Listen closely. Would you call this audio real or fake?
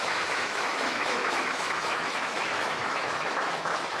fake